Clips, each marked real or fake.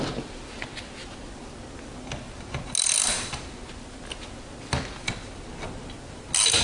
real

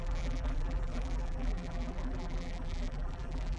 fake